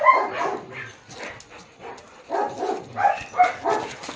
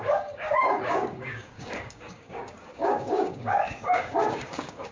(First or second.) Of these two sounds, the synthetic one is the second